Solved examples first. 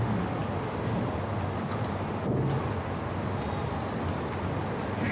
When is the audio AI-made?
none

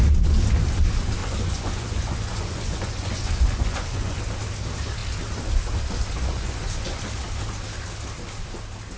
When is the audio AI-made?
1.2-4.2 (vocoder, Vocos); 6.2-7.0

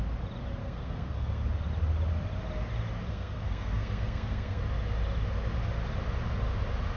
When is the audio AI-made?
0.6-1.4 (codec, SNAC); 3.1-4.6

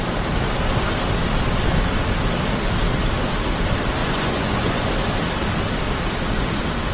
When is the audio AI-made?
4.0-4.9 (vocoder, Vocos)